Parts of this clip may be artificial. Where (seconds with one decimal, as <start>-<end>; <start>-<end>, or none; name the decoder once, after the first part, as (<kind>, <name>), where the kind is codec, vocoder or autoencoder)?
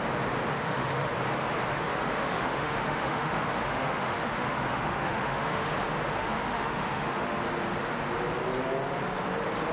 0.5-1.1 (autoencoder, DAC-VAE); 1.7-5.7; 6.2-7.4